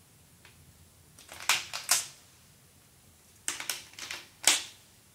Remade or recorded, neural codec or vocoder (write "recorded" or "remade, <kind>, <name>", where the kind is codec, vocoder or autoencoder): recorded